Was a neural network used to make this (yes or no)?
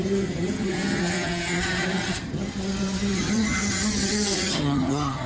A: yes